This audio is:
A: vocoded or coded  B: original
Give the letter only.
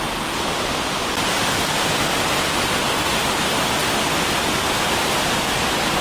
B